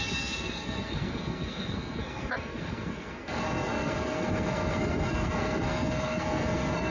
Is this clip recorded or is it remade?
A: remade